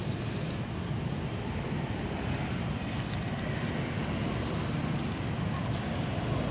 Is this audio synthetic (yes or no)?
no